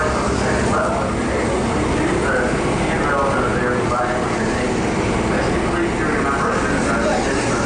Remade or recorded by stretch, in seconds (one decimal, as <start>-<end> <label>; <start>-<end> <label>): 0.0-7.7 recorded